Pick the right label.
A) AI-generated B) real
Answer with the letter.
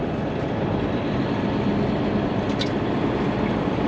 B